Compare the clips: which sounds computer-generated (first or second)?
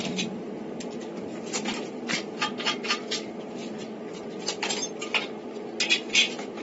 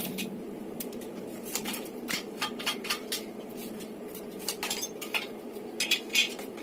second